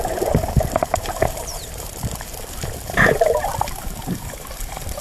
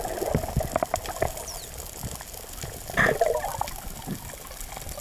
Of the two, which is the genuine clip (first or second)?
second